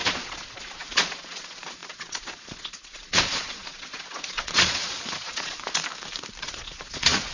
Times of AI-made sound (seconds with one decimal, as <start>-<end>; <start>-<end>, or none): 0.0-5.8; 6.4-7.3